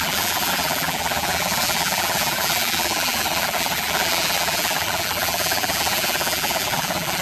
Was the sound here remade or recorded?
remade